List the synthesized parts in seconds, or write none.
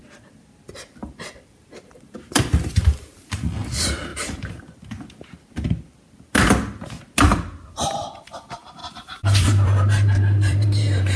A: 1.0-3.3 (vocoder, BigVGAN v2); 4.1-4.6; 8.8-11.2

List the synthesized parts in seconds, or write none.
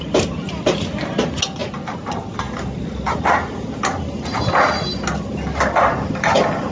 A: none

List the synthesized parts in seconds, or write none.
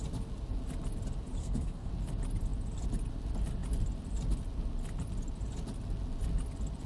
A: 1.4-1.9 (codec, SNAC)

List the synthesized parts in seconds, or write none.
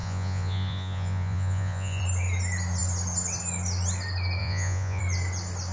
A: 0.0-2.0 (vocoder, Vocos); 4.4-5.0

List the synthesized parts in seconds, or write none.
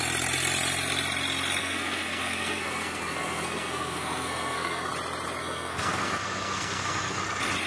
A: 1.6-4.9 (codec, SNAC); 5.4-7.2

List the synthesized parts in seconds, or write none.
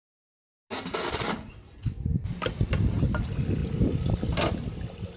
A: none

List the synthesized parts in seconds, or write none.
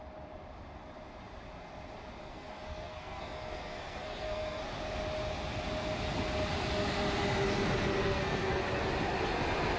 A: 2.2-4.6 (codec, SNAC); 8.0-8.6